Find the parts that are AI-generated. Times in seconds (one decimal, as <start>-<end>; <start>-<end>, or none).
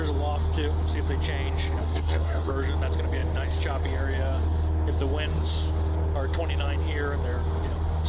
1.8-2.5